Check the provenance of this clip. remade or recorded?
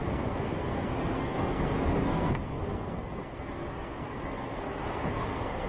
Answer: remade